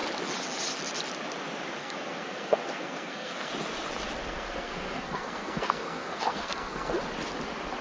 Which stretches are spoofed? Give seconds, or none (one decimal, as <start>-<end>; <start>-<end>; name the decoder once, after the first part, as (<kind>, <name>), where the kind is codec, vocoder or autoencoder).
1.8-3.5 (codec, SNAC); 4.2-7.0